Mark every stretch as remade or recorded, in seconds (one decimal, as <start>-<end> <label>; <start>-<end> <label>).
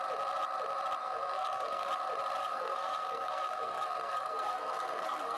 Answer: 0.0-1.0 recorded; 1.0-1.9 remade; 1.9-2.4 recorded; 2.4-5.4 remade